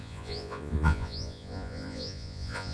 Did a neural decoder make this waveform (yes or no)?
yes